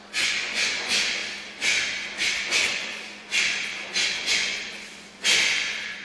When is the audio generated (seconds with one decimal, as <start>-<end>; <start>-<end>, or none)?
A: 0.0-1.2; 2.5-3.7; 4.2-6.0